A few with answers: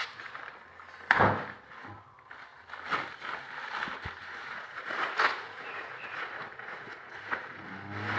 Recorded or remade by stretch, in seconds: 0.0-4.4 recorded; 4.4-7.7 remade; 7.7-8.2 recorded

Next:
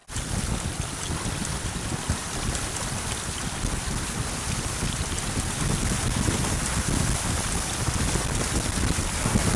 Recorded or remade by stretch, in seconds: 0.0-9.6 recorded

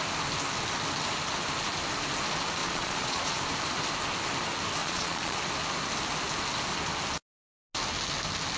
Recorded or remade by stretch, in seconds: 0.0-2.6 recorded; 2.6-3.4 remade; 3.4-4.8 recorded; 4.8-5.4 remade; 5.4-8.6 recorded

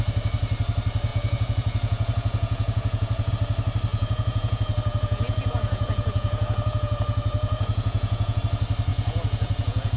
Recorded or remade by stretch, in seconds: 0.0-1.1 recorded; 1.1-3.3 remade; 3.3-3.9 recorded; 3.9-8.4 remade; 8.4-8.9 recorded; 8.9-10.0 remade

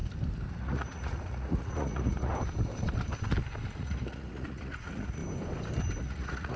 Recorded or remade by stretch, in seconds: 0.0-0.5 recorded; 0.5-2.3 remade; 2.3-3.7 recorded; 3.7-5.2 remade; 5.2-6.0 recorded; 6.0-6.6 remade

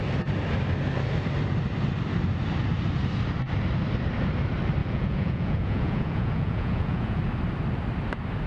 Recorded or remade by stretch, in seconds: 0.0-4.8 recorded; 4.8-7.2 remade; 7.2-8.5 recorded

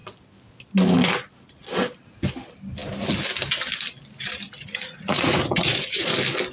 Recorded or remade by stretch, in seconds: 0.0-4.6 recorded; 4.6-6.1 remade; 6.1-6.5 recorded